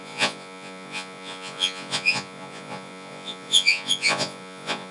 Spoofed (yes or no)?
yes